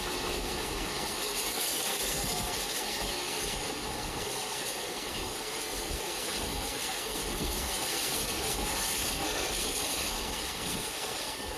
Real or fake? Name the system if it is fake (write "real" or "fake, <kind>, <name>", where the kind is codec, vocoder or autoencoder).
fake, codec, SNAC